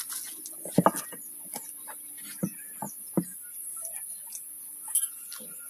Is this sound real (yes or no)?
yes